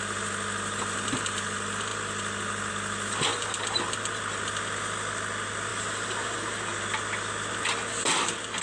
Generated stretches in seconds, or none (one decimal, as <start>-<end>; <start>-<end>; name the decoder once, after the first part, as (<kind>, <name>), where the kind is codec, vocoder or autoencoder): 3.3-3.8 (vocoder, BigVGAN v2); 5.7-6.4